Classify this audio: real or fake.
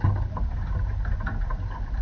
real